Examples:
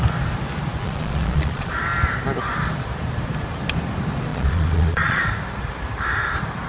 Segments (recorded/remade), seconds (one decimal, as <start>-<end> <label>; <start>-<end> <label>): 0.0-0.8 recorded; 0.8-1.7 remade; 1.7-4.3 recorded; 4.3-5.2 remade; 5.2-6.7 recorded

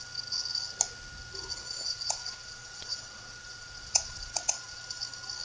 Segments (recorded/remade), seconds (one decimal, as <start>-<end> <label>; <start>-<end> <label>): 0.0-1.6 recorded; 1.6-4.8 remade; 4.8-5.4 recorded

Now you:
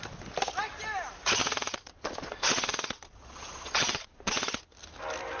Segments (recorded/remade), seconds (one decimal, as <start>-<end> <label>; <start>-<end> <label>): 0.0-1.4 recorded; 1.4-4.6 remade; 4.6-5.4 recorded

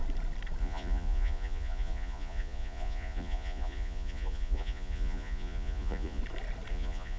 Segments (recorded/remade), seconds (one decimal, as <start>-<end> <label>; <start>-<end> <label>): 0.0-0.6 recorded; 0.6-6.2 remade; 6.2-6.7 recorded; 6.7-7.2 remade

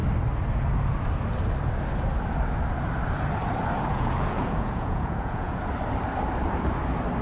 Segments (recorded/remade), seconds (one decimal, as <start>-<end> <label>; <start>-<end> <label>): 0.0-3.9 recorded; 3.9-5.6 remade; 5.6-7.2 recorded

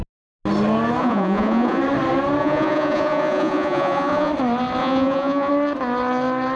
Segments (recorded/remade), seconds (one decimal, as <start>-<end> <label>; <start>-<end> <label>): 0.0-1.0 recorded; 1.0-1.8 remade; 1.8-2.4 recorded; 2.4-4.3 remade; 4.3-4.8 recorded; 4.8-5.5 remade; 5.5-6.6 recorded